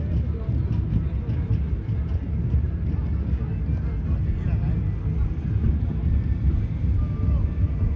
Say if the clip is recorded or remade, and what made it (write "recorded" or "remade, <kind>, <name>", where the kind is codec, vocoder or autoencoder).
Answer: recorded